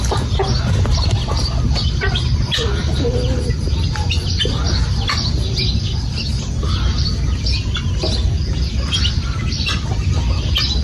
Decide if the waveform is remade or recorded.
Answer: recorded